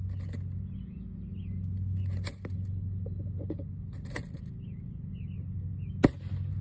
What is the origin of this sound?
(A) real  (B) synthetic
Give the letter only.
A